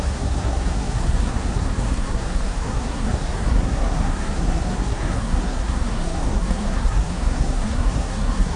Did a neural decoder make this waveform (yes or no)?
yes